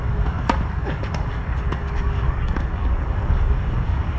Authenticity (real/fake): fake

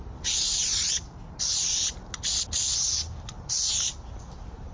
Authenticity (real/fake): real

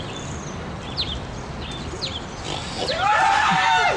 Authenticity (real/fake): real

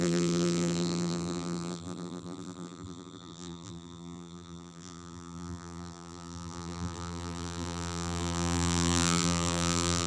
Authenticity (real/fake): fake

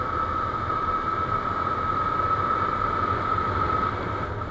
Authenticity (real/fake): real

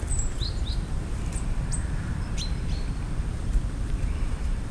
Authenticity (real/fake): fake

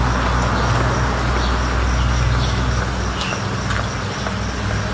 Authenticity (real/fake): real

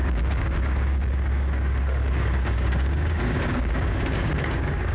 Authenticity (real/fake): fake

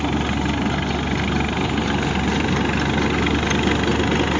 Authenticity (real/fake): real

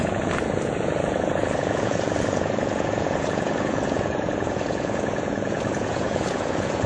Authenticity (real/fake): fake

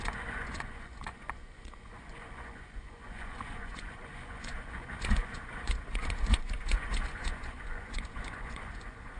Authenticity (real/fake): fake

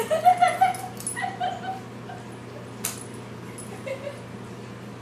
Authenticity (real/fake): real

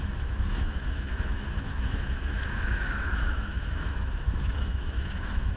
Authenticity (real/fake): fake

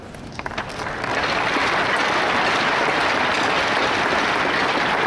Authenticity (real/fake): real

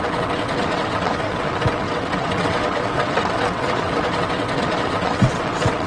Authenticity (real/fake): fake